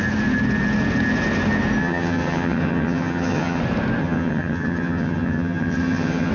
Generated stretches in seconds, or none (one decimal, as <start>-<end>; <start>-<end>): 1.8-3.6; 4.0-6.3